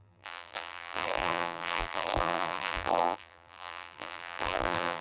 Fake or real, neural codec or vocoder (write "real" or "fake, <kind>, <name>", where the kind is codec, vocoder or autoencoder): fake, vocoder, BigVGAN v2